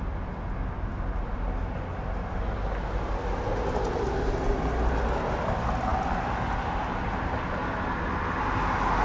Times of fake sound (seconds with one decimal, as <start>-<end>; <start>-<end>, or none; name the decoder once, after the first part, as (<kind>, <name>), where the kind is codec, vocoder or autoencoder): none